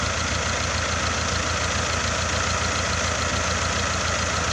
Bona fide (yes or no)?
yes